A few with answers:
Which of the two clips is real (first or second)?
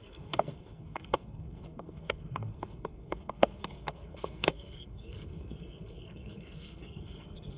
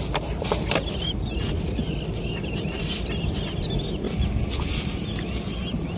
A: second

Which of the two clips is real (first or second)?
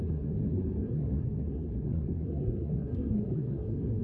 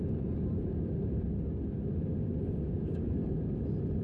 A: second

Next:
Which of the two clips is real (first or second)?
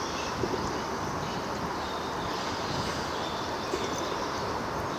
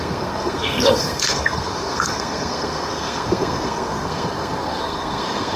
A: first